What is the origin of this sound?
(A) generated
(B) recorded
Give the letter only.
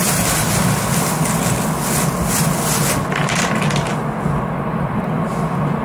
B